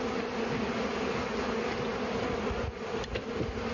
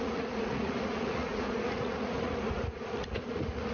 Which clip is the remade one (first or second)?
second